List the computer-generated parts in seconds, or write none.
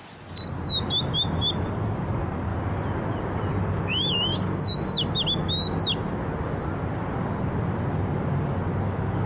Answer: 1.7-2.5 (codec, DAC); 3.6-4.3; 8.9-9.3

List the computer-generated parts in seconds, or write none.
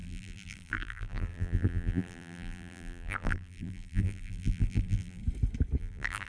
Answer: 0.0-5.2 (vocoder, BigVGAN v2); 5.8-6.3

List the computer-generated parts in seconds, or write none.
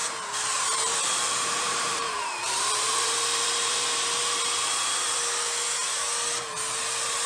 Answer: 0.0-4.4 (vocoder, BigVGAN v2)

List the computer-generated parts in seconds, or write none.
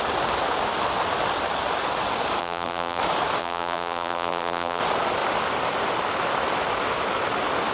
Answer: 2.4-3.0 (vocoder, BigVGAN v2); 3.4-4.8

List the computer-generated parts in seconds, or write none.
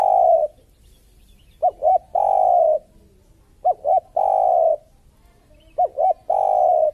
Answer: 0.0-2.7 (vocoder, BigVGAN v2)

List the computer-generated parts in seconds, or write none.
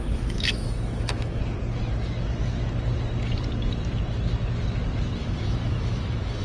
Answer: 0.0-1.4 (autoencoder, DAC-VAE); 5.2-6.4